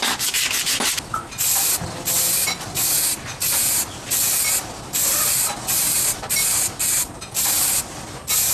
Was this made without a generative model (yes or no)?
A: yes